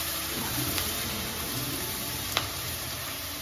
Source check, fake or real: fake